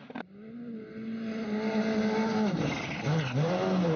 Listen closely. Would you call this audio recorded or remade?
recorded